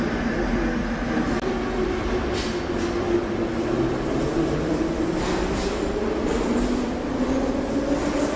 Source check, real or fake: real